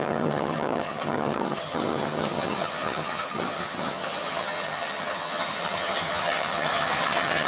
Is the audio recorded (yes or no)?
no